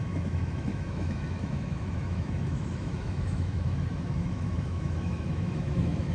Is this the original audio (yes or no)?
no